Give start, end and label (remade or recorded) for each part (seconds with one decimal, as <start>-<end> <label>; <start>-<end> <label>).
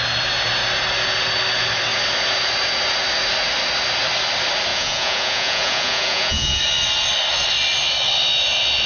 0.0-4.7 recorded; 4.7-6.6 remade; 6.6-8.9 recorded